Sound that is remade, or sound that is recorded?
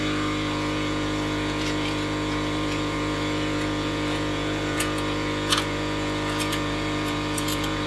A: remade